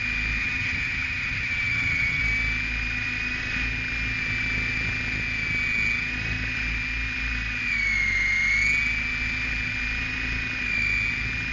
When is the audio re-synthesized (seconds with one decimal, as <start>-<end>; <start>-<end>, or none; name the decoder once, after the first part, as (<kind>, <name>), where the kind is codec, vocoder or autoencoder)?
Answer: 0.4-2.2 (vocoder, HiFi-GAN)